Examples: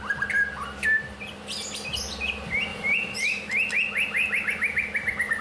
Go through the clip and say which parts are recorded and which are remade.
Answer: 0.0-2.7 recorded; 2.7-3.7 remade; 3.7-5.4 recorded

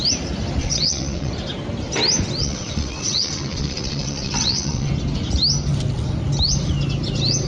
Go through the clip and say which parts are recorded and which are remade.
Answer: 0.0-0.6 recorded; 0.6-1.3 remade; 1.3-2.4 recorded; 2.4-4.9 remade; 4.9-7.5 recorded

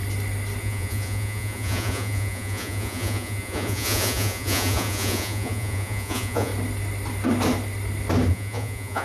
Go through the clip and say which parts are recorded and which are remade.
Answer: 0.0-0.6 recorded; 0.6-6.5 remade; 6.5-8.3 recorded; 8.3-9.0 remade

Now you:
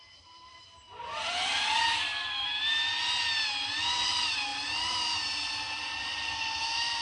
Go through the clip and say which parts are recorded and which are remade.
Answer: 0.0-2.1 remade; 2.1-4.1 recorded; 4.1-4.5 remade; 4.5-6.6 recorded; 6.6-7.0 remade